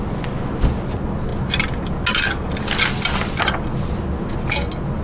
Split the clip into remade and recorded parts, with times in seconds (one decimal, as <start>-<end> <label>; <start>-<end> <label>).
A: 0.0-5.0 recorded

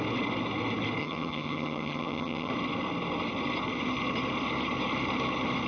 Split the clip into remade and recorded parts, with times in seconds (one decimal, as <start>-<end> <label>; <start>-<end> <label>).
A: 0.0-1.0 recorded; 1.0-2.5 remade; 2.5-5.7 recorded

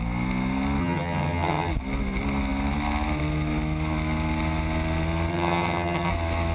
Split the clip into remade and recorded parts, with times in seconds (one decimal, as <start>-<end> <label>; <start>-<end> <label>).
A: 0.0-0.8 recorded; 0.8-1.7 remade; 1.7-5.3 recorded; 5.3-6.1 remade; 6.1-6.5 recorded

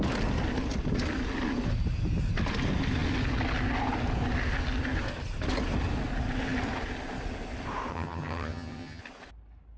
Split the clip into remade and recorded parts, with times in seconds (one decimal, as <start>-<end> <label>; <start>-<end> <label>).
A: 0.0-7.9 recorded; 7.9-9.0 remade; 9.0-9.8 recorded

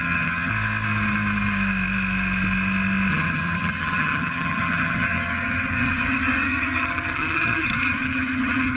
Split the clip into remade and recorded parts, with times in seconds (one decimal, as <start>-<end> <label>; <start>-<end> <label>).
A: 0.0-0.5 remade; 0.5-3.1 recorded; 3.1-8.8 remade

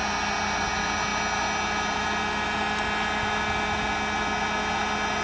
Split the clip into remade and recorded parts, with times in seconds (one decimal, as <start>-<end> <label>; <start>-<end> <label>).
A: 0.0-5.2 recorded